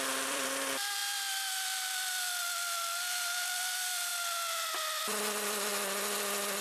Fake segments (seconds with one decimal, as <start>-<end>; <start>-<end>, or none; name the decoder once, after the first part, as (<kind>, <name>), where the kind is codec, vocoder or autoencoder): 0.0-4.1 (vocoder, BigVGAN v2); 5.0-5.7